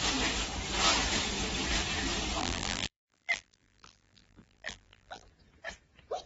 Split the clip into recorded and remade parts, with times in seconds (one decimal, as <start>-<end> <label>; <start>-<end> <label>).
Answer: 0.0-2.4 recorded; 2.4-5.3 remade; 5.3-6.3 recorded